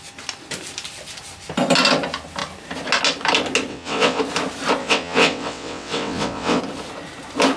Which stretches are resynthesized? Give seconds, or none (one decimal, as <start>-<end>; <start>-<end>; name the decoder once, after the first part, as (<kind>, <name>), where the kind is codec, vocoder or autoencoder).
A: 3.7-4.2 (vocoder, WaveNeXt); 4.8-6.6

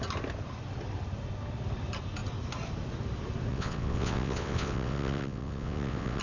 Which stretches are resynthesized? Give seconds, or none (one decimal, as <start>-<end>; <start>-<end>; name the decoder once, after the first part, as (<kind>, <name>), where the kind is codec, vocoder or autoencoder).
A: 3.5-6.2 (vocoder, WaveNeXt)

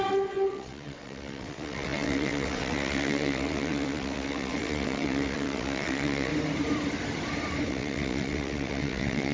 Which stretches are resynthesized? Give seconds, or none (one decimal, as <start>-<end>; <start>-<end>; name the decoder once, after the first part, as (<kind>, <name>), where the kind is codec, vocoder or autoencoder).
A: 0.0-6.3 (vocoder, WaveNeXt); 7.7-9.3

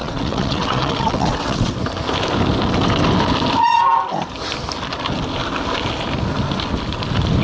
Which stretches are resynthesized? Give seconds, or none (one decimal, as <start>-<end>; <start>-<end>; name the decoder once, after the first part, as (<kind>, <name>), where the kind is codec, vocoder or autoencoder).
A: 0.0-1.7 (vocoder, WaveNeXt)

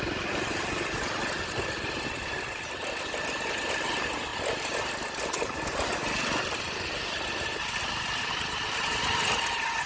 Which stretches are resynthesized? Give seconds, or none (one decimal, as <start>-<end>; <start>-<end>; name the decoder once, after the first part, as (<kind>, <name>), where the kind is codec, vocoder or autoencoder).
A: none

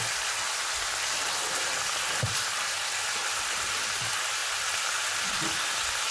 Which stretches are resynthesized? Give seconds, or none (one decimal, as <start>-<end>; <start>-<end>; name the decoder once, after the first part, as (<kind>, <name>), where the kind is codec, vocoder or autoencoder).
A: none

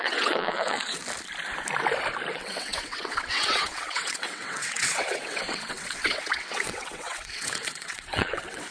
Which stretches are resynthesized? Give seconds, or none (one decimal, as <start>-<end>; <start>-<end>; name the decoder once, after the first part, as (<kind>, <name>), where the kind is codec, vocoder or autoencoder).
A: 0.0-1.0 (vocoder, WaveNeXt); 2.3-8.7

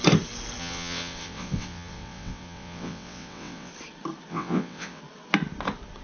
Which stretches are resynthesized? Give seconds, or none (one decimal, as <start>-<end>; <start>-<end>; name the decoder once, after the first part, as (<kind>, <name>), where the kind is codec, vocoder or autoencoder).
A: 0.6-3.7 (vocoder, WaveNeXt); 4.3-5.0